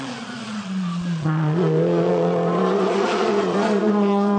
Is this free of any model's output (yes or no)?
no